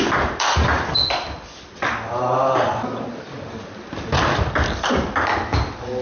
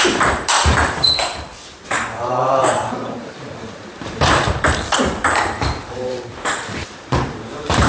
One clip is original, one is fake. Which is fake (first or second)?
second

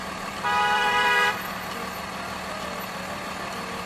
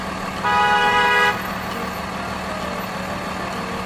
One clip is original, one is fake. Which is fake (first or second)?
first